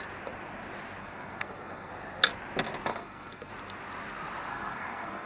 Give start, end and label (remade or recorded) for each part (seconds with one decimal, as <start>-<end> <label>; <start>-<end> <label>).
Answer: 0.0-1.0 recorded; 1.0-1.9 remade; 1.9-2.9 recorded; 2.9-3.5 remade; 3.5-4.5 recorded; 4.5-5.3 remade